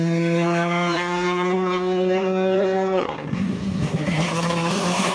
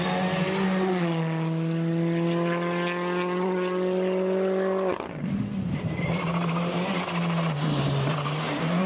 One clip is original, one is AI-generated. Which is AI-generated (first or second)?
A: first